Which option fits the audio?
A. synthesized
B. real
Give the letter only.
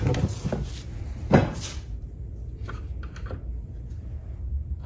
B